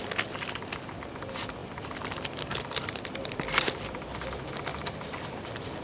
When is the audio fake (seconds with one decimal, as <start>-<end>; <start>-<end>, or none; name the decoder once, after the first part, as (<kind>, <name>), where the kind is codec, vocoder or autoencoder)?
1.6-4.3 (vocoder, BigVGAN v2); 4.7-5.8